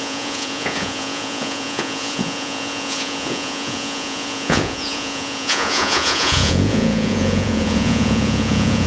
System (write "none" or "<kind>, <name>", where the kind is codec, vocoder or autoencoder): vocoder, Vocos